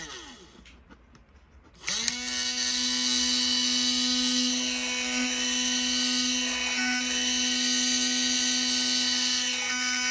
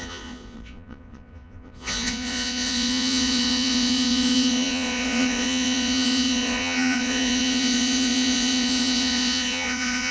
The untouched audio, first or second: first